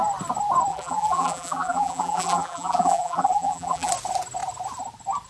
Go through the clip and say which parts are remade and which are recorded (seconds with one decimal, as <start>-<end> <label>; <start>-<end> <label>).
0.0-0.7 recorded; 0.7-3.9 remade; 3.9-5.3 recorded